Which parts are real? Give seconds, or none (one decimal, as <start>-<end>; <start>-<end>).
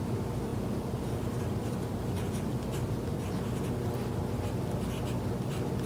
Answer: 0.0-0.5; 1.2-5.9